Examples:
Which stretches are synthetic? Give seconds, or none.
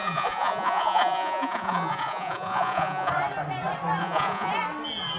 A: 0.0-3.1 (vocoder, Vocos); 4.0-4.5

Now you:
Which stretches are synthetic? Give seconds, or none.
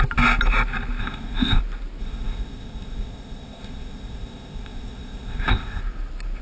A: 1.0-1.6 (codec, ZipCodec); 2.0-5.8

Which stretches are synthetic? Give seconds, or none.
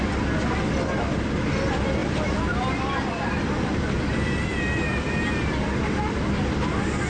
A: 2.0-5.2 (vocoder, BigVGAN v2)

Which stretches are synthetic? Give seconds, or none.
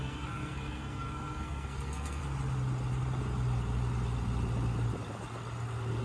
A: 0.0-2.2 (codec, SNAC)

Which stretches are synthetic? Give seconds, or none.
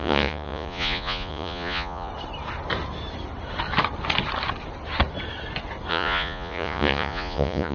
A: 0.0-2.1 (vocoder, Vocos); 5.9-7.7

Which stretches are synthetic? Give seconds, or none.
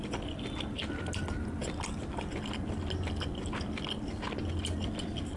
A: none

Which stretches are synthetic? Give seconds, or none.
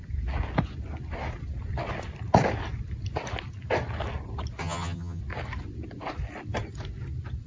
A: 4.6-5.2 (vocoder, HiFi-GAN)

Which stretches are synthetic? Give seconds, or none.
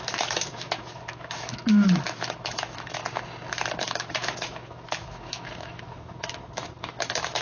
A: 0.0-3.0 (autoencoder, DAC-VAE); 3.8-7.4